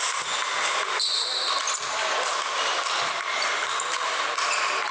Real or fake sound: real